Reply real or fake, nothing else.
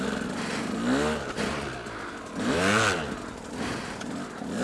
real